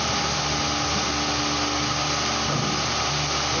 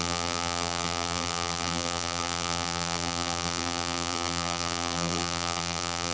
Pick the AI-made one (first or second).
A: second